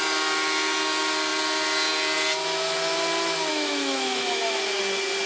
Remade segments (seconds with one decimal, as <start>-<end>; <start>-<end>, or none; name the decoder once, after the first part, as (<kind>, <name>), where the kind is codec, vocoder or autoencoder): 3.5-4.8 (autoencoder, DAC-VAE)